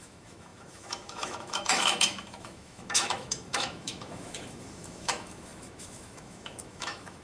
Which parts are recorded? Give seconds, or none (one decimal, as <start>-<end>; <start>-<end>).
none

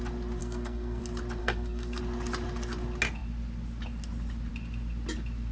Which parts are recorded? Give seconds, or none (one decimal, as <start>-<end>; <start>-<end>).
0.0-0.4; 1.0-1.4; 2.0-5.5

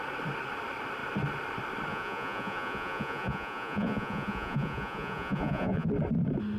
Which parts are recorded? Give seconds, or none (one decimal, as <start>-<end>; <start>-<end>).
0.0-1.9; 5.9-6.6

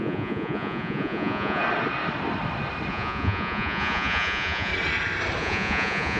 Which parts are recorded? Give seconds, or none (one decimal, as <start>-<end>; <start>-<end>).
1.6-2.9; 4.7-5.4

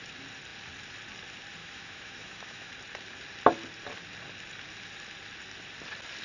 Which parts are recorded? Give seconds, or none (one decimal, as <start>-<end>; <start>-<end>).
0.0-1.6; 2.7-6.2